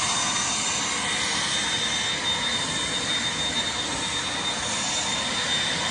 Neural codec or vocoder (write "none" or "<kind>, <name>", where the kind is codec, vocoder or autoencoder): none